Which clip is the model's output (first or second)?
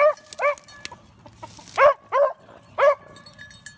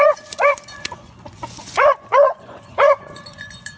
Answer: second